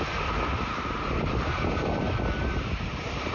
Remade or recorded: recorded